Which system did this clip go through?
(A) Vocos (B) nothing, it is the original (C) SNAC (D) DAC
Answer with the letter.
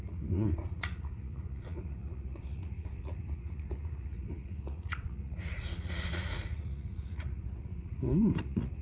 A